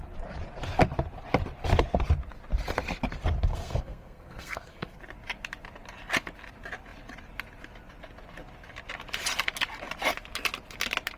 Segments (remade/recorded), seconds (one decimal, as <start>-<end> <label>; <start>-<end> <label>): 0.0-3.5 recorded; 3.5-5.0 remade; 5.0-11.2 recorded